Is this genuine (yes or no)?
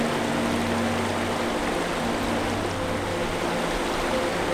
yes